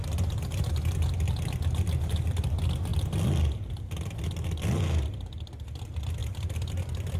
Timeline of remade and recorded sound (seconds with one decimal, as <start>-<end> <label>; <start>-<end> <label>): 0.0-6.2 recorded; 6.2-7.2 remade